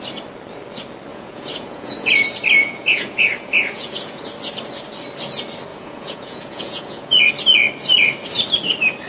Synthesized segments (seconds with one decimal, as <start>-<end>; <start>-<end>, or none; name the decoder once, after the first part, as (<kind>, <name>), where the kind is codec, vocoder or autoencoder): 1.1-2.1 (vocoder, Vocos); 2.6-4.2; 5.7-7.3